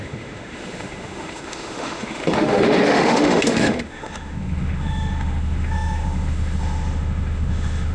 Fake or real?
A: fake